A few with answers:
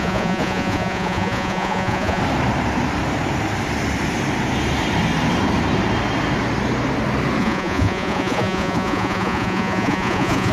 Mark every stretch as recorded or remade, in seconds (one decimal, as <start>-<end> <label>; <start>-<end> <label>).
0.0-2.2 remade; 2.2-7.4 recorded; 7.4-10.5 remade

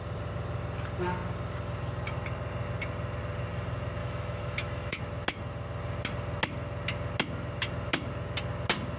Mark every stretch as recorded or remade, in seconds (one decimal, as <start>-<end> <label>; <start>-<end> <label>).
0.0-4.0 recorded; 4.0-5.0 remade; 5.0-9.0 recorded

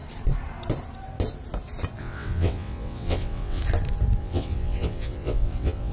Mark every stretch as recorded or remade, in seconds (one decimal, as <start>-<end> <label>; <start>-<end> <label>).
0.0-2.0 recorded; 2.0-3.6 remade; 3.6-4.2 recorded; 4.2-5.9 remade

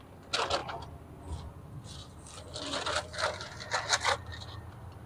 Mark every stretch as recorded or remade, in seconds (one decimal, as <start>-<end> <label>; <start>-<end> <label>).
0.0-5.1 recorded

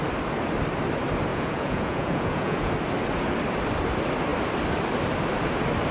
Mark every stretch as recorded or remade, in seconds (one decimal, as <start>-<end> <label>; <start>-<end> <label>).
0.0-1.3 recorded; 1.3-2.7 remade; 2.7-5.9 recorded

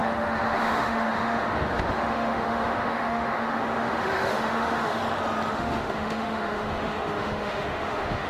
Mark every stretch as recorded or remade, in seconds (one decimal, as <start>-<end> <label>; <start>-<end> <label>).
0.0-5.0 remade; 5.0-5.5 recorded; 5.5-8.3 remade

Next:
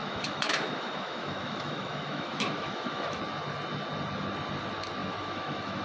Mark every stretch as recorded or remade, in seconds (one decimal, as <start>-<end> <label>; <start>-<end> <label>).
0.0-3.2 remade; 3.2-5.0 recorded; 5.0-5.8 remade

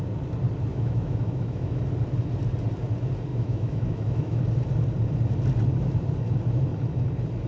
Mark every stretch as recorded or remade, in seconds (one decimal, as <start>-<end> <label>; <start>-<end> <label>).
0.0-0.7 recorded; 0.7-1.8 remade; 1.8-3.3 recorded; 3.3-4.4 remade; 4.4-7.5 recorded